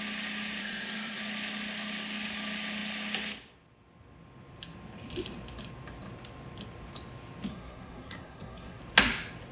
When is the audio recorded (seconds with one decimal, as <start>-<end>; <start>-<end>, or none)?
0.0-0.6; 1.2-7.5; 8.8-9.5